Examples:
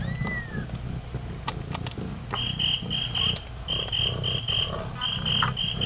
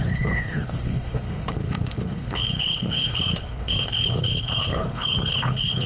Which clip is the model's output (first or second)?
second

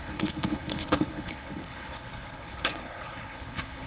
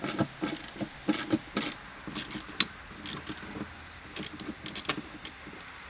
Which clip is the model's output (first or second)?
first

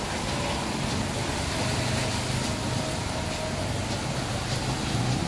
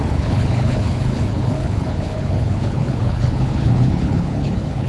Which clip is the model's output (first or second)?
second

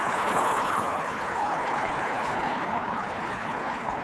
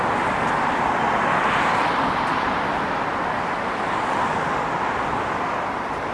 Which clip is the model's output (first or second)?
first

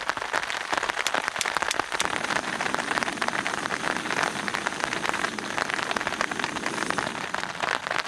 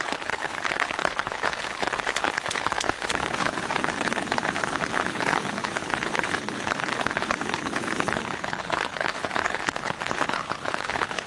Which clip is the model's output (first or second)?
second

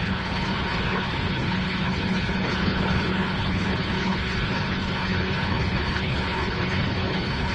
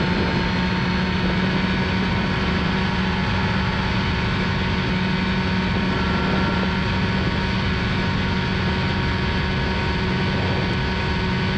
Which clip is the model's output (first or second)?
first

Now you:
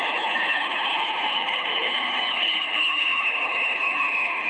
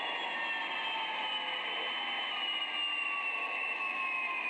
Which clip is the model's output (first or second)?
first